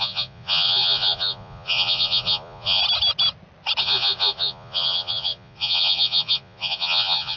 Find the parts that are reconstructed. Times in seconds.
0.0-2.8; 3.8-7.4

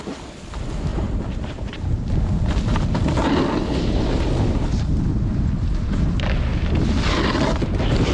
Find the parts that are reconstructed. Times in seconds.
0.9-2.1; 4.7-5.4

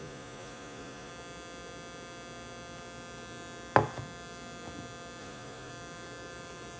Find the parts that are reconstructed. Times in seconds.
0.0-1.1; 5.2-5.7

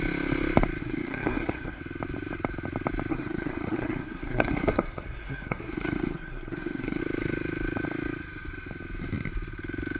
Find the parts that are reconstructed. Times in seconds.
0.8-1.8; 3.1-7.0